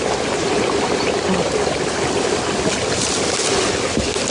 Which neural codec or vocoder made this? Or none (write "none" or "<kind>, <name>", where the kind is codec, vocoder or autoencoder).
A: none